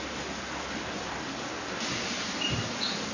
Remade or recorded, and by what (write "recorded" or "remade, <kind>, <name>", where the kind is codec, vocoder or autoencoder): recorded